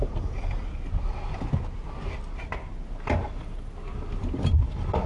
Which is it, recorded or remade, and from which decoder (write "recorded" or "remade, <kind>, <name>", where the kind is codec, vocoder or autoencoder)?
recorded